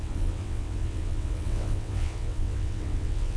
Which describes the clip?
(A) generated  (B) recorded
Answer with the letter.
A